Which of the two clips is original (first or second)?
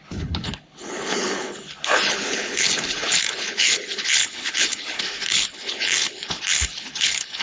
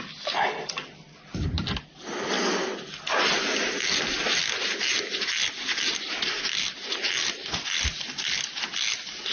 second